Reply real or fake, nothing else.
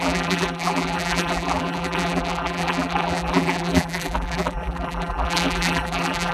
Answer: fake